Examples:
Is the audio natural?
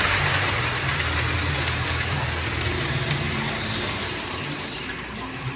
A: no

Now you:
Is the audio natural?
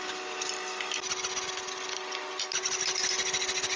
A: yes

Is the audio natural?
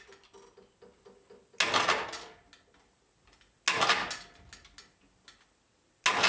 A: yes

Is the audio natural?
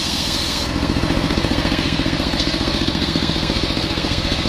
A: no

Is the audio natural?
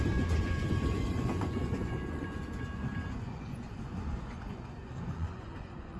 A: no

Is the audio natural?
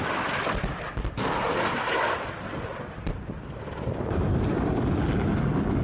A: yes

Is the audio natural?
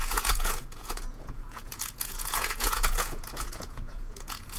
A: no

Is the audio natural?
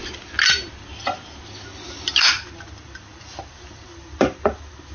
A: yes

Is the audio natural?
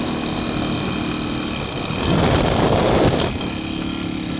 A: yes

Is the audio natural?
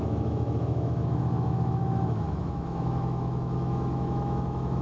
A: no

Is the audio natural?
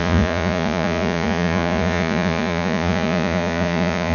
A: no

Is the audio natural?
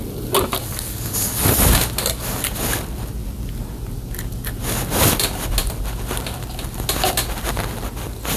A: yes